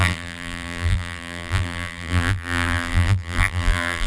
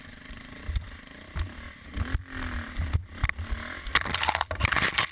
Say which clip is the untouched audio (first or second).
second